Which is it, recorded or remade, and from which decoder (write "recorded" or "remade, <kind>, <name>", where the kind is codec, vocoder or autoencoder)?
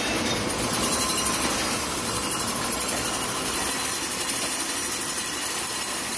recorded